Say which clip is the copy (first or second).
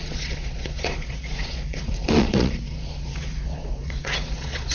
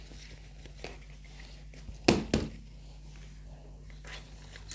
first